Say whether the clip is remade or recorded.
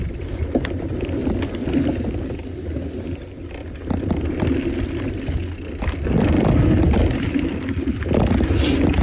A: recorded